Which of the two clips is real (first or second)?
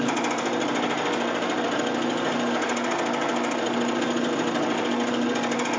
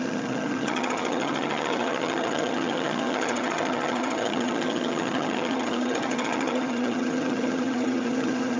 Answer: first